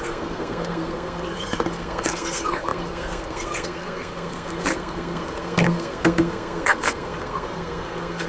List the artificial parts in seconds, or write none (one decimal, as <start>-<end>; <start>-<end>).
0.0-8.3